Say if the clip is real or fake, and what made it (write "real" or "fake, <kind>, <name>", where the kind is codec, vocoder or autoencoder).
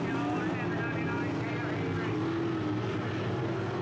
real